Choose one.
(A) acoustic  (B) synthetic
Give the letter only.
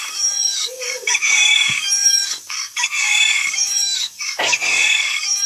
B